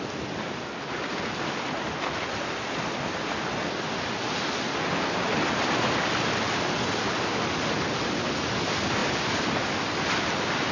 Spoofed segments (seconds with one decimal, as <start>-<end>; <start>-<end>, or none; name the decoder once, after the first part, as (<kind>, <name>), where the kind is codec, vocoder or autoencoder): 9.0-9.6 (vocoder, BigVGAN v2)